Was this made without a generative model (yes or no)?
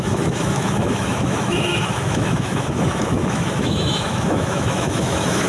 no